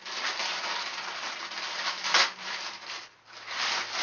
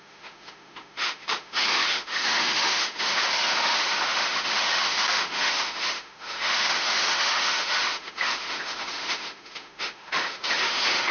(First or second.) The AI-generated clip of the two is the second